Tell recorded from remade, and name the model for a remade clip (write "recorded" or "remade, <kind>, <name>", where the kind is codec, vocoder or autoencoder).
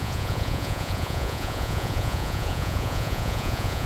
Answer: remade, vocoder, Vocos